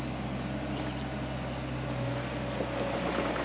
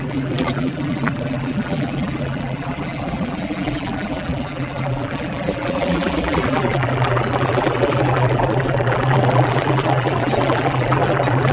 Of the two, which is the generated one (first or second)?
second